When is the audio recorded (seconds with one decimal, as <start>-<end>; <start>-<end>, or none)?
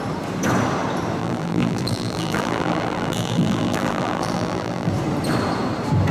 0.0-1.2; 4.9-6.1